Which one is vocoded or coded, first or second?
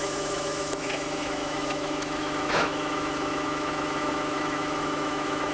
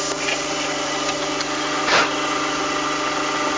first